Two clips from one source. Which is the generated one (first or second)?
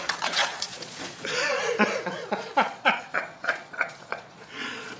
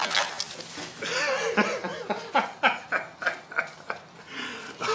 first